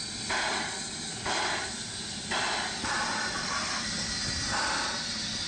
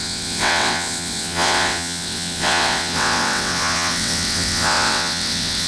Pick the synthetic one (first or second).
second